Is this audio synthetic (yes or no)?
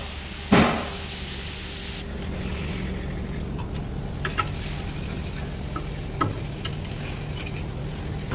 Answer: no